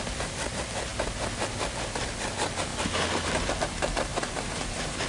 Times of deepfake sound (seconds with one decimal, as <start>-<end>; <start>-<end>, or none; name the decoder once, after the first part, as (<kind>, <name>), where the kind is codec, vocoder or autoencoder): none